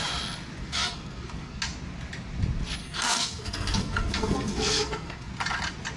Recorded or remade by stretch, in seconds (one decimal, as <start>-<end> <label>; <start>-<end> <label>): 0.0-0.6 recorded; 0.6-1.6 remade; 1.6-2.8 recorded; 2.8-5.3 remade; 5.3-6.0 recorded

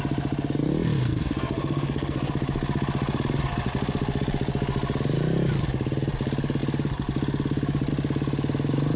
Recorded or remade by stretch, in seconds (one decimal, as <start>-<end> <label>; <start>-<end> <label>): 0.0-1.0 recorded; 1.0-2.3 remade; 2.3-9.0 recorded

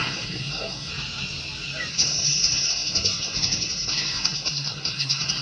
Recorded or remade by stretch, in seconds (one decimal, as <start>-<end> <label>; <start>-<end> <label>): 0.0-0.9 remade; 0.9-1.9 recorded; 1.9-5.4 remade

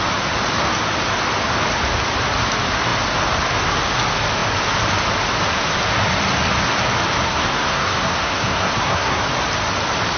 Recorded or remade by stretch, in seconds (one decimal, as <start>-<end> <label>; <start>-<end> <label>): 0.0-7.3 recorded; 7.3-9.2 remade; 9.2-10.2 recorded

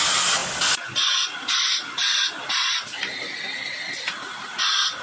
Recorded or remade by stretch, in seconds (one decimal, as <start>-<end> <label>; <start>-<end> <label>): 0.0-5.0 recorded

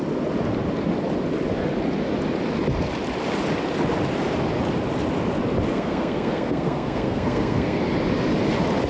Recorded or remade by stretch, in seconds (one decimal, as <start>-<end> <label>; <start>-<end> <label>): 0.0-5.7 recorded; 5.7-7.8 remade; 7.8-8.9 recorded